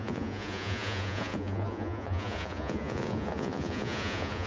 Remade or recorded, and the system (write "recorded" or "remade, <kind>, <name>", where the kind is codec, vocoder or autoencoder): remade, vocoder, Vocos